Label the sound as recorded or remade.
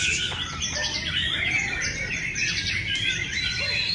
remade